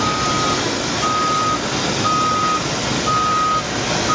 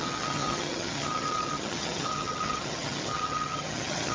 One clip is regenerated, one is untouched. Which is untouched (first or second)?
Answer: first